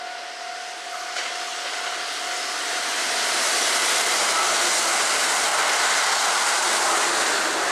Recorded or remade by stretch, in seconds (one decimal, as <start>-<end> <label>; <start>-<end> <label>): 0.0-7.7 recorded